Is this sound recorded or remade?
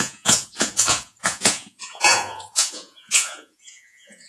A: remade